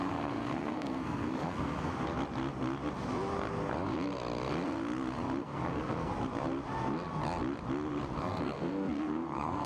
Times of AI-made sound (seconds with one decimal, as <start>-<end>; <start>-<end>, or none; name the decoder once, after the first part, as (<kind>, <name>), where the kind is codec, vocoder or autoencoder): 0.0-1.9 (codec, SNAC); 5.4-6.1; 8.2-9.7